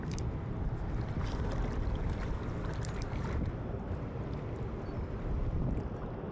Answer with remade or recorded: recorded